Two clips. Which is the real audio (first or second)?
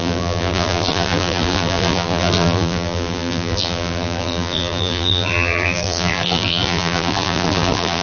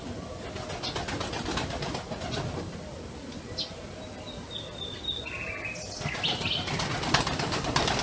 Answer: second